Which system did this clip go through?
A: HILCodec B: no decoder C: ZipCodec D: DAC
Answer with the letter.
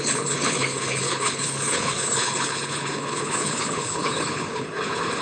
A